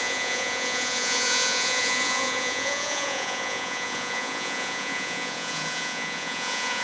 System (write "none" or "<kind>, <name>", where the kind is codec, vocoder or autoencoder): vocoder, Vocos